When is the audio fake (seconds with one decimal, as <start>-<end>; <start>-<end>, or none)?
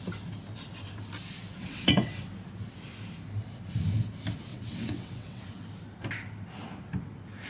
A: 1.6-2.3; 4.5-5.4